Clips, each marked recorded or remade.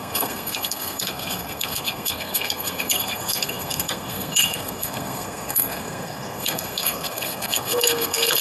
remade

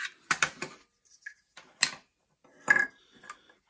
recorded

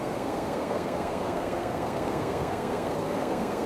remade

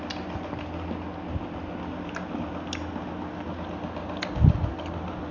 recorded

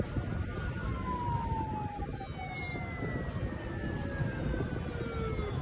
recorded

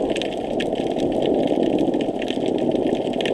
recorded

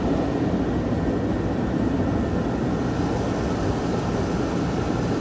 recorded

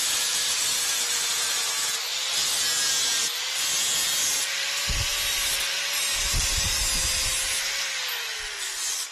recorded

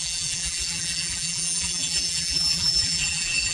remade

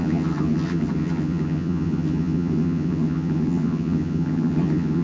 remade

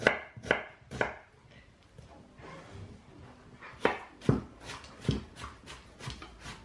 recorded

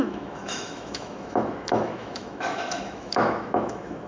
remade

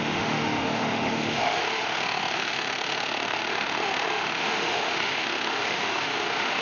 remade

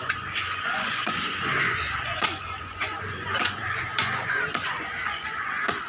remade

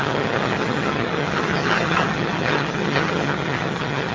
remade